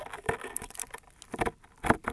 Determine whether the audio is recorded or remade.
recorded